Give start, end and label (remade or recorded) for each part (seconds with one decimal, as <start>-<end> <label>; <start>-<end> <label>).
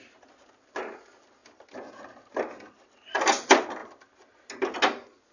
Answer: 0.0-5.3 recorded